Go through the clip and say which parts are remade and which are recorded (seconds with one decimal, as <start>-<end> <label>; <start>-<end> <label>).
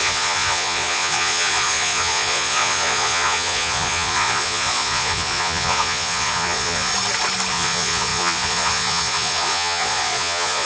0.0-6.9 remade; 6.9-7.5 recorded; 7.5-10.7 remade